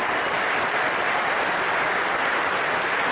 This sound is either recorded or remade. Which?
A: remade